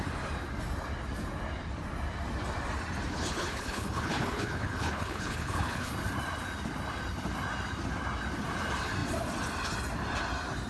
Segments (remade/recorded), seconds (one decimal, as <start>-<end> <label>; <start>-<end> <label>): 0.0-3.1 recorded; 3.1-5.9 remade; 5.9-10.7 recorded